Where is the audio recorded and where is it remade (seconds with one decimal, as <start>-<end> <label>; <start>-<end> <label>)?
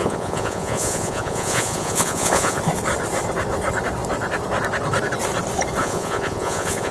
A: 0.0-2.6 remade; 2.6-5.8 recorded; 5.8-6.9 remade